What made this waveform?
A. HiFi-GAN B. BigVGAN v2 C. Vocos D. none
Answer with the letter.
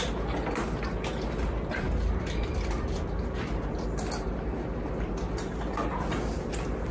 D